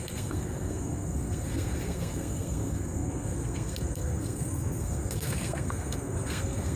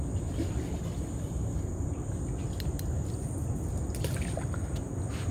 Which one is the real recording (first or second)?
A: second